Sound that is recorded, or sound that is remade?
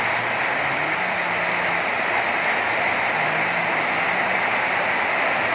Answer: recorded